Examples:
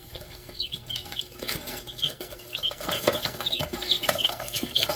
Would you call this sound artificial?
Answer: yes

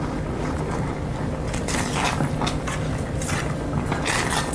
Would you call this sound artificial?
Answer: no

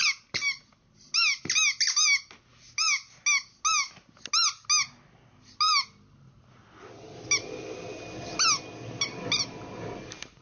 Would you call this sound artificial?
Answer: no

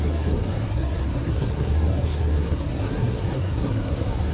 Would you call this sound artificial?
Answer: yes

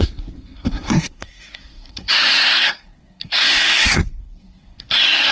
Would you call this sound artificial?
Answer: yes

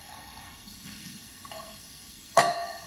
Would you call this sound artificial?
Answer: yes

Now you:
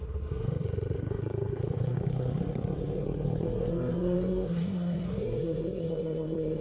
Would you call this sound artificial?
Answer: yes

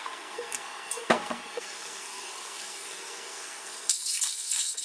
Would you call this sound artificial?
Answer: yes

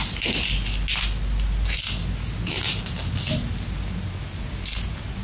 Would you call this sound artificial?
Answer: no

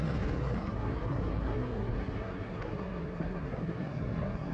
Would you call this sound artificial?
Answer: yes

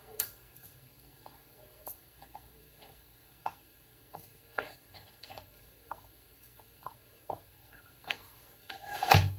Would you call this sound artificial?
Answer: yes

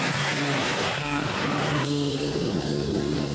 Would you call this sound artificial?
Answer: yes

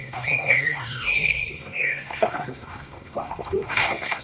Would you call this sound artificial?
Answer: yes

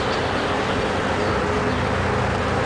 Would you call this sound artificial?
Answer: no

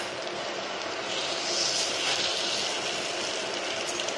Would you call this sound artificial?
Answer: no